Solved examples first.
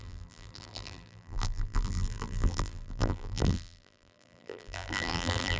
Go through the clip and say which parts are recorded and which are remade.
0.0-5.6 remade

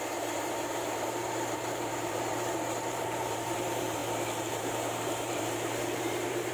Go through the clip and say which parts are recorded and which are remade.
0.0-4.0 remade; 4.0-4.5 recorded; 4.5-6.5 remade

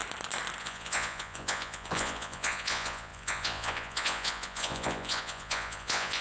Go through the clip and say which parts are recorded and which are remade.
0.0-0.6 recorded; 0.6-6.2 remade

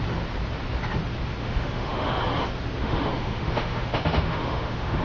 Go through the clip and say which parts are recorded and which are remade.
0.0-1.4 recorded; 1.4-2.2 remade; 2.2-2.8 recorded; 2.8-5.0 remade

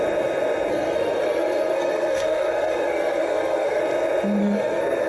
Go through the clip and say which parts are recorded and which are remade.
0.0-0.7 recorded; 0.7-3.8 remade; 3.8-4.4 recorded; 4.4-5.1 remade